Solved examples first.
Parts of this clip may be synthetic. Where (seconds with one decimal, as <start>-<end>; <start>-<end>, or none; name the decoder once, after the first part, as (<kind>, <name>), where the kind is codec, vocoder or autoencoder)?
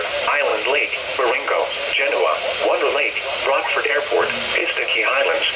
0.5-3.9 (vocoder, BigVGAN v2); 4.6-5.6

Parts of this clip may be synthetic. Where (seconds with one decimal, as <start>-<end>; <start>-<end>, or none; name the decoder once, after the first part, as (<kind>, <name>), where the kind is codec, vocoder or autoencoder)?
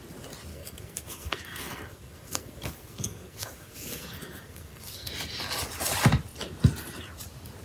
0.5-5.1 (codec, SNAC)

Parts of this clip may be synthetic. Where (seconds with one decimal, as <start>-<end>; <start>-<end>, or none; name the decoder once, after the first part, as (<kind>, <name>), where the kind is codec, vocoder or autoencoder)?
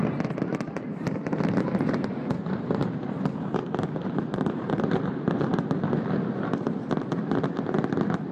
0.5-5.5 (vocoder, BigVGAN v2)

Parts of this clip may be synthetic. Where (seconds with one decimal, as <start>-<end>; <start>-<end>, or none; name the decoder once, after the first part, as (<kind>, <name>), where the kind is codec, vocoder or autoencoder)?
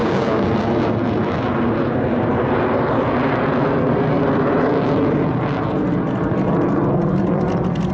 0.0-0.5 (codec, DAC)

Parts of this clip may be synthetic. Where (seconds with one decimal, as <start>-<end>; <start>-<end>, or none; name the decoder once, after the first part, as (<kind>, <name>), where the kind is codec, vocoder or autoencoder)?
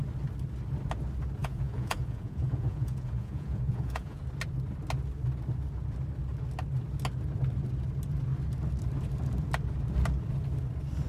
1.4-4.2 (vocoder, Vocos)